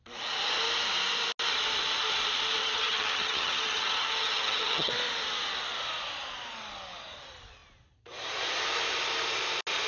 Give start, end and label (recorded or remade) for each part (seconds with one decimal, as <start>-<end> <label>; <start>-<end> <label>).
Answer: 0.0-2.6 recorded; 2.6-4.9 remade; 4.9-9.9 recorded